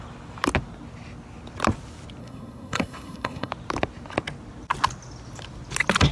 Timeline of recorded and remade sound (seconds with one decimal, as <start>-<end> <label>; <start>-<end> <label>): 0.0-2.2 recorded; 2.2-3.5 remade; 3.5-6.1 recorded